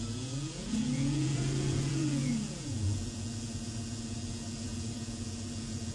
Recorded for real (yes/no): no